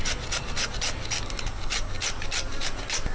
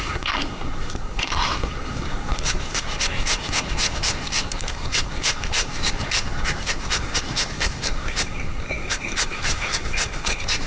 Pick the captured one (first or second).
first